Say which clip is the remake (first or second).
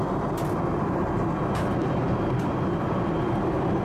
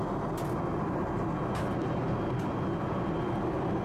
first